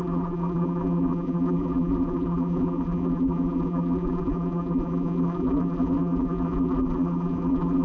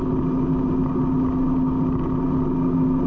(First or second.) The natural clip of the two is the second